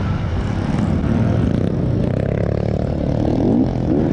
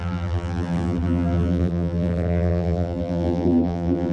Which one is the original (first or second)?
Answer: first